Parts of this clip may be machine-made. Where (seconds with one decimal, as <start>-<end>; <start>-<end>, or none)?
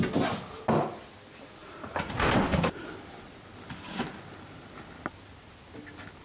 1.6-5.3